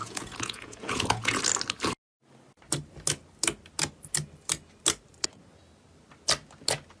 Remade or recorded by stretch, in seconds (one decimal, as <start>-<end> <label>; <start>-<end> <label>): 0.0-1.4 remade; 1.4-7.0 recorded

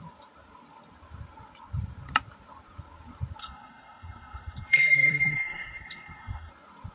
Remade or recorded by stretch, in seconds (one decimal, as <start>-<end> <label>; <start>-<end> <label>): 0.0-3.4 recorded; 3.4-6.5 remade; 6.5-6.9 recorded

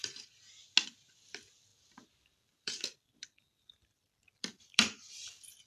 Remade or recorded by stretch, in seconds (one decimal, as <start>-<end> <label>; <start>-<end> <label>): 0.0-0.7 remade; 0.7-1.7 recorded; 1.7-5.1 remade; 5.1-5.7 recorded

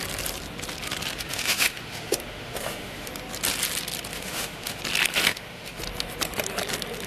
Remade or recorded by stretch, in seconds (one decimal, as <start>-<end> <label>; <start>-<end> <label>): 0.0-1.1 recorded; 1.1-3.1 remade; 3.1-4.1 recorded; 4.1-4.8 remade; 4.8-5.3 recorded; 5.3-5.8 remade; 5.8-7.1 recorded

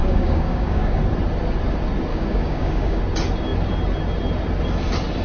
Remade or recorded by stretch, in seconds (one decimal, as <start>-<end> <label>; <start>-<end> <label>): 0.0-1.0 remade; 1.0-2.1 recorded; 2.1-3.0 remade; 3.0-5.2 recorded

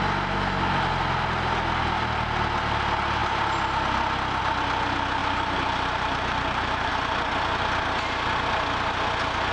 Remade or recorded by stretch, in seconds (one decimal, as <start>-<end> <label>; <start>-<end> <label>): 0.0-5.2 recorded; 5.2-6.9 remade; 6.9-9.5 recorded

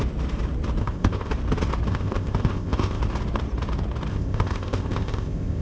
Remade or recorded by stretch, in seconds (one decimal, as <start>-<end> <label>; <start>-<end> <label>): 0.0-0.8 recorded; 0.8-1.3 remade; 1.3-1.9 recorded; 1.9-3.0 remade; 3.0-4.1 recorded; 4.1-5.6 remade

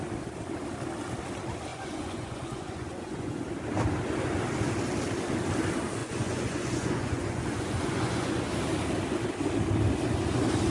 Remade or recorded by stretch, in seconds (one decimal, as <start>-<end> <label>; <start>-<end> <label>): 0.0-1.7 recorded; 1.7-3.4 remade; 3.4-6.0 recorded; 6.0-8.5 remade; 8.5-10.7 recorded